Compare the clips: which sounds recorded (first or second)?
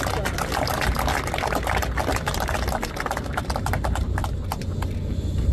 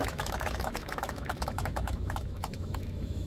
first